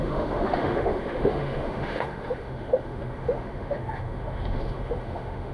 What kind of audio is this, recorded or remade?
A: remade